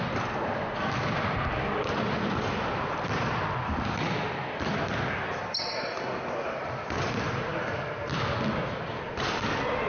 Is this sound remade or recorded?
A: remade